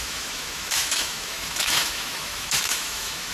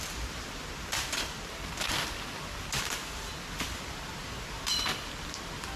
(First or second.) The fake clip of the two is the first